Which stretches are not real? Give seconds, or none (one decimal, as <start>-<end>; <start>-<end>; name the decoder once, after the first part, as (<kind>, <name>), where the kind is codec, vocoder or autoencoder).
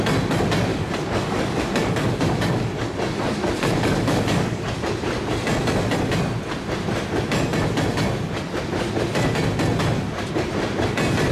0.7-4.8 (codec, DAC)